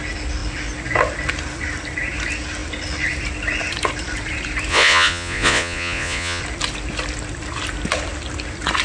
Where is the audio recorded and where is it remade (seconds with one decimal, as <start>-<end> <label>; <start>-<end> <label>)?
0.0-4.7 recorded; 4.7-6.4 remade; 6.4-8.8 recorded